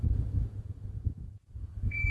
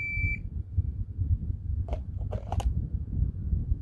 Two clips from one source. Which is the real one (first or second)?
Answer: second